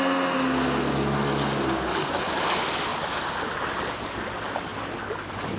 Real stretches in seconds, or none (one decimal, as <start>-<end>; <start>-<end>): 0.0-2.9; 3.5-5.6